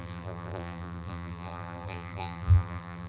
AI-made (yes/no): yes